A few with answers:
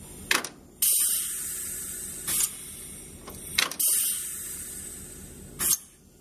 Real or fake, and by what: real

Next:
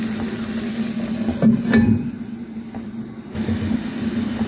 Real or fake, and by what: real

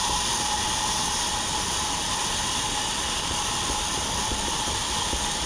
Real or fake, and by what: fake, vocoder, BigVGAN v2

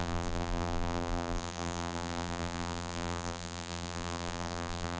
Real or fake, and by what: fake, vocoder, BigVGAN v2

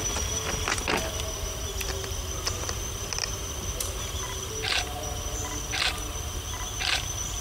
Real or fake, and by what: real